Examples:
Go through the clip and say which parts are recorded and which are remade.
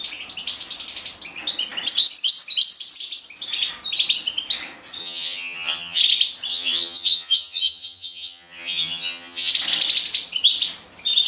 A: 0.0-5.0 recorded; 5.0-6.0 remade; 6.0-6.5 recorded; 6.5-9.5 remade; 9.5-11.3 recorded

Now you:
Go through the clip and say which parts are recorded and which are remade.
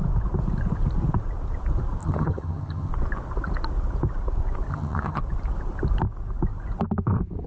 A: 0.0-2.0 recorded; 2.0-2.9 remade; 2.9-4.7 recorded; 4.7-5.2 remade; 5.2-7.5 recorded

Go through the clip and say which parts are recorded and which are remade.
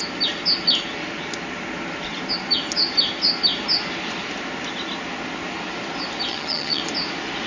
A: 0.0-6.3 recorded; 6.3-6.8 remade; 6.8-7.5 recorded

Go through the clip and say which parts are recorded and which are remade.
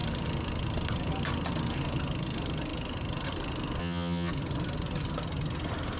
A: 0.0-3.8 recorded; 3.8-4.3 remade; 4.3-6.0 recorded